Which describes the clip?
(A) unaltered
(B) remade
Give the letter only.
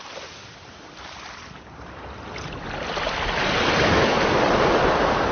A